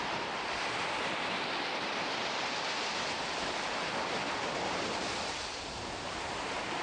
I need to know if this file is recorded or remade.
remade